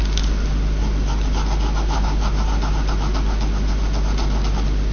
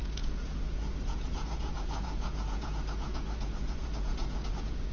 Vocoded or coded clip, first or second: second